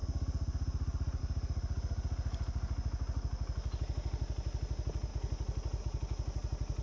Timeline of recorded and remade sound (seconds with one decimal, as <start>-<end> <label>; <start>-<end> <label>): 0.0-6.8 recorded